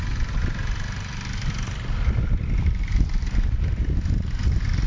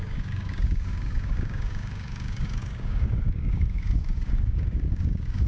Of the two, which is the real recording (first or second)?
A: first